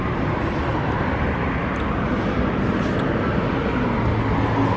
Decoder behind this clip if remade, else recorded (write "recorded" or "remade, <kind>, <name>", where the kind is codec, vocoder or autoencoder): recorded